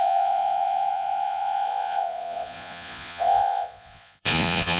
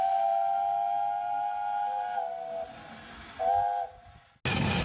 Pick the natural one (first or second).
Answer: second